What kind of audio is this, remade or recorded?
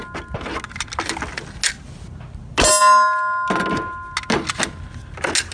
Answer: recorded